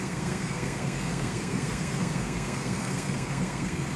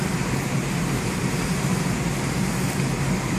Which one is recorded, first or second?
second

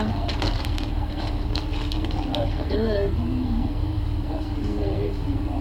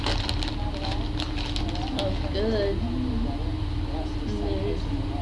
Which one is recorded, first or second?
second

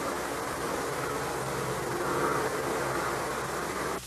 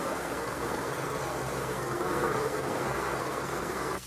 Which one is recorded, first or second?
first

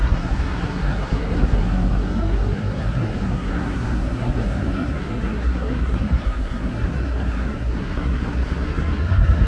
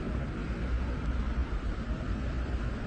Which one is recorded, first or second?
second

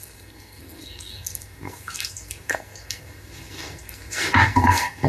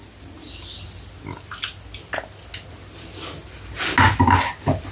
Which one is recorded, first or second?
second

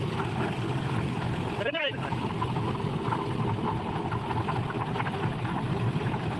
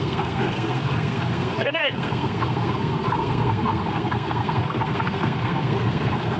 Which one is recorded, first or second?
first